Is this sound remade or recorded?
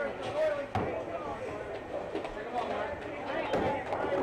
recorded